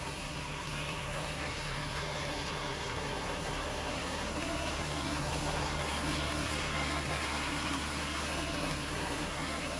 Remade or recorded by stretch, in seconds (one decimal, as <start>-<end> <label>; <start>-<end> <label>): 0.0-9.8 remade